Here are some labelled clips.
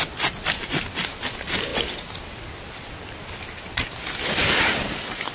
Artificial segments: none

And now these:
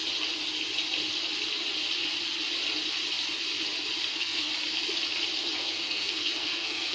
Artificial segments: 4.1-4.5 (codec, SNAC); 5.6-6.9

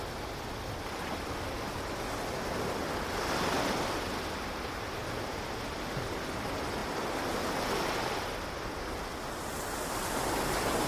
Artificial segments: none

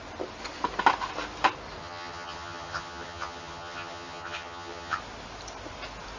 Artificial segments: 1.8-5.0 (vocoder, HiFi-GAN)

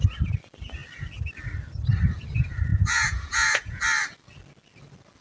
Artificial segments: 2.7-3.8 (vocoder, Vocos)

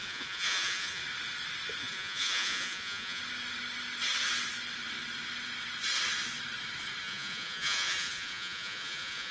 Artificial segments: 0.0-1.0 (vocoder, Vocos); 1.8-3.2; 7.0-9.3